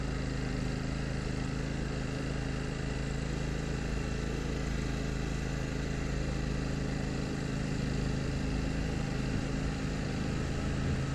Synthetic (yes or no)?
no